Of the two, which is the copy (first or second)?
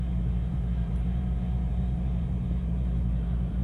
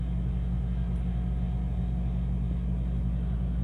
first